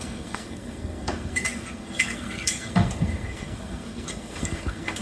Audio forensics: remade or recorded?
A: remade